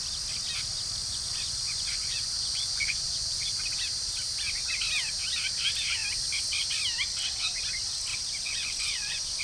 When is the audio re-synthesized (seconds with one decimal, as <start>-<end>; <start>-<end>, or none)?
1.0-3.4; 8.1-9.4